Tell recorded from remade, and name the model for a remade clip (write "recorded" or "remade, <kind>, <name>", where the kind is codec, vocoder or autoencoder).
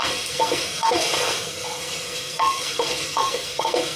remade, codec, SNAC